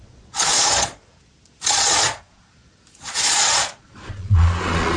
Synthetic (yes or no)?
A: yes